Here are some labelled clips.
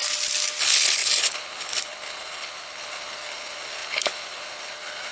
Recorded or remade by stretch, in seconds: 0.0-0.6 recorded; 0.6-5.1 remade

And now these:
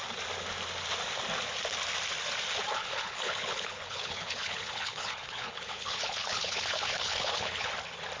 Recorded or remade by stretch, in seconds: 0.0-2.8 recorded; 2.8-7.7 remade; 7.7-8.2 recorded

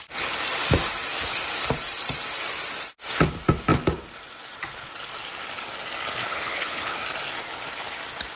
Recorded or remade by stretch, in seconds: 0.0-6.2 recorded; 6.2-7.0 remade; 7.0-8.4 recorded

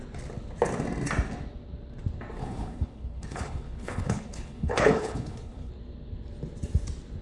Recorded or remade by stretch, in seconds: 0.0-2.4 recorded; 2.4-5.7 remade; 5.7-7.2 recorded

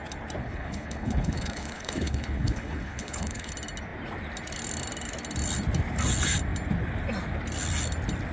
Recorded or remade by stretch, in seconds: 0.0-0.4 recorded; 0.4-3.5 remade; 3.5-8.3 recorded